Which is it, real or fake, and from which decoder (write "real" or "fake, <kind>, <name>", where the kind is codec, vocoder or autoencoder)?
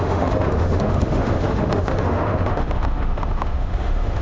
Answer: fake, autoencoder, DAC-VAE